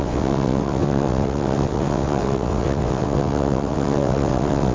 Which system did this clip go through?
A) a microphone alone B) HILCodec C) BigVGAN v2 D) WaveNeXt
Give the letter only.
D